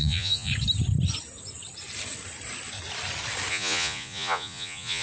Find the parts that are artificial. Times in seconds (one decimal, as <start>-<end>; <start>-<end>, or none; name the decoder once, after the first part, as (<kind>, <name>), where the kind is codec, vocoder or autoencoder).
0.0-0.5 (vocoder, Vocos); 3.5-5.0